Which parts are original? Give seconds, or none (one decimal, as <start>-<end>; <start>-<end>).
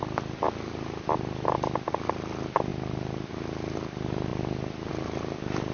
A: 0.0-5.7